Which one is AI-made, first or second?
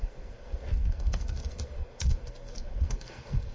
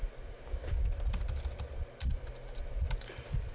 first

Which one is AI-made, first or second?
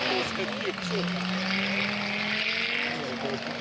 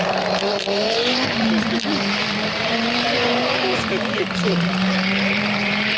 second